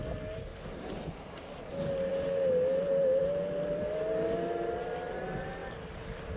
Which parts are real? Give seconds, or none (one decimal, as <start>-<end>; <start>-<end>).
0.0-6.4